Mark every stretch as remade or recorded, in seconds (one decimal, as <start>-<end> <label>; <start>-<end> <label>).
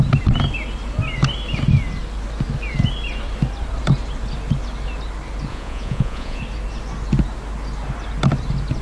0.0-5.5 recorded; 5.5-6.4 remade; 6.4-8.8 recorded